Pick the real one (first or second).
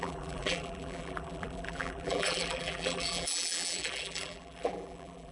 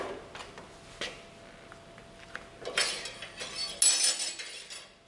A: second